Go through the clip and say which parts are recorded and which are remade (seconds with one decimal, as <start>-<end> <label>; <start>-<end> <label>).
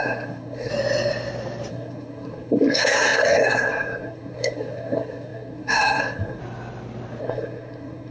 0.0-0.7 remade; 0.7-1.7 recorded; 1.7-6.4 remade; 6.4-7.2 recorded; 7.2-8.1 remade